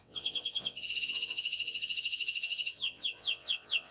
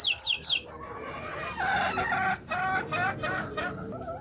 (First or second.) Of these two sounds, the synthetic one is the first